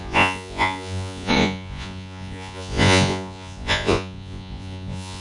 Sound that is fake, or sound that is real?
fake